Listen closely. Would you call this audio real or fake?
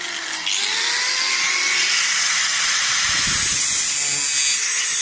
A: real